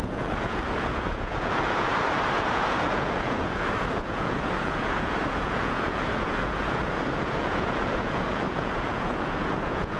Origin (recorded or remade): remade